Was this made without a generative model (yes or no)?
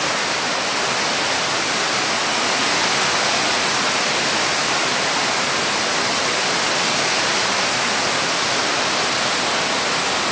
yes